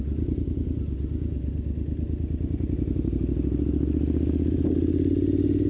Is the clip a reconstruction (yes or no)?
no